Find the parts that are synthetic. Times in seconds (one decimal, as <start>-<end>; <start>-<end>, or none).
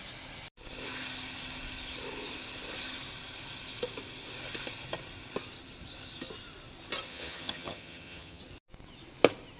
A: 7.1-8.4